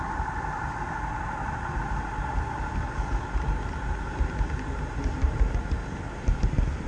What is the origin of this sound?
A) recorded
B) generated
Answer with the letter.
A